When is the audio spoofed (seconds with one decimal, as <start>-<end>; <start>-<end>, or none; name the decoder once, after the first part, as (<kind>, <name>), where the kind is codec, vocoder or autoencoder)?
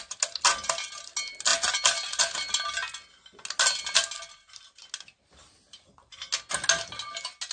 none